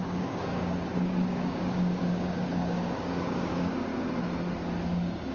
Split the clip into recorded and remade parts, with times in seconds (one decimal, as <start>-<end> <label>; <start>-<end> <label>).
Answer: 0.0-3.9 remade; 3.9-5.3 recorded